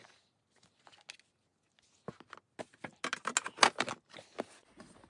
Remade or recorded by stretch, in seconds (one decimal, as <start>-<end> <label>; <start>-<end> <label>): 0.0-5.1 recorded